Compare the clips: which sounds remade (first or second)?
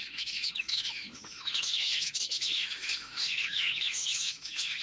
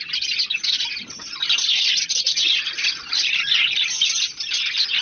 first